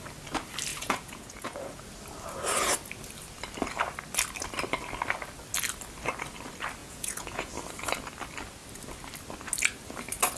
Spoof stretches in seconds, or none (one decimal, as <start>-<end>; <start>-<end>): 0.7-1.8; 6.8-7.5